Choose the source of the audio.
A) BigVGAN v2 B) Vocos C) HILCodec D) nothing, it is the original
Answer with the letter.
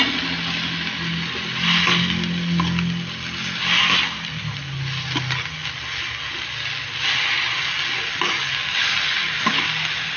D